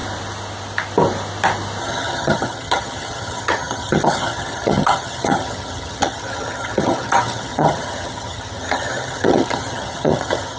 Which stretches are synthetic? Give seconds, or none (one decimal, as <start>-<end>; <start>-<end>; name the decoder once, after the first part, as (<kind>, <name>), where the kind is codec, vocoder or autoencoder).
1.8-10.6 (vocoder, HiFi-GAN)